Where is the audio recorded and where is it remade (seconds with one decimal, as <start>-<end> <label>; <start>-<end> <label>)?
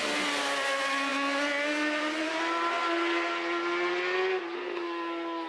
0.0-5.5 recorded